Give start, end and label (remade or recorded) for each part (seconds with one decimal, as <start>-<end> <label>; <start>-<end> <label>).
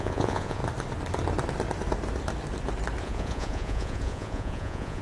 0.0-0.6 remade; 0.6-3.0 recorded; 3.0-5.0 remade